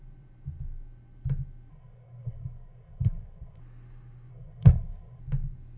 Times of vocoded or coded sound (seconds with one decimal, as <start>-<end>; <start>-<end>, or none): 1.7-3.6; 4.3-5.2